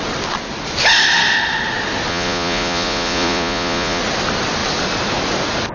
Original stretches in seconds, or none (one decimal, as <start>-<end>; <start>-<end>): 0.0-2.1; 4.0-5.7